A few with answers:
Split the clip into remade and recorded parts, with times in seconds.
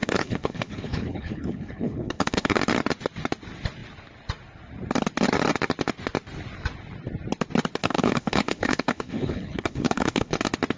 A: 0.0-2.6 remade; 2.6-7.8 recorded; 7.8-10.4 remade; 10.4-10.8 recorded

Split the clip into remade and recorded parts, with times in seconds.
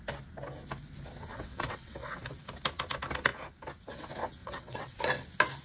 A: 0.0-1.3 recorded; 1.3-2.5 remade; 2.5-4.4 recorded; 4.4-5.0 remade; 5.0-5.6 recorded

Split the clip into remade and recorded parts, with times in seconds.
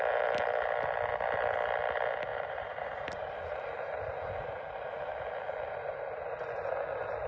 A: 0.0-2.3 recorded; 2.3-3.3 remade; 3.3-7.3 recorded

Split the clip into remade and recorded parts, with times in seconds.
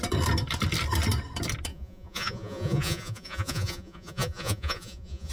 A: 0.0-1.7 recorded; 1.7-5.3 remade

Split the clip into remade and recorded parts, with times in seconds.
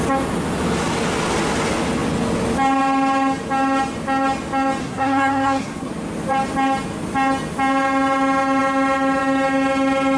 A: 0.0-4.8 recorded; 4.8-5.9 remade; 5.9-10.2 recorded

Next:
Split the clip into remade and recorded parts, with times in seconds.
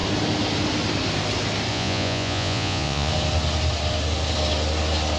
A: 0.0-1.7 recorded; 1.7-3.1 remade; 3.1-5.2 recorded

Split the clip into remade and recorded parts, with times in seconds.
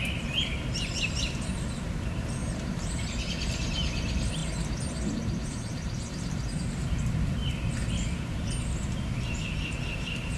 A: 0.0-4.4 remade; 4.4-5.1 recorded; 5.1-10.4 remade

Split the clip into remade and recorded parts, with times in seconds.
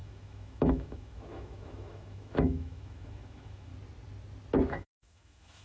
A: 0.0-3.7 remade; 3.7-4.7 recorded; 4.7-5.6 remade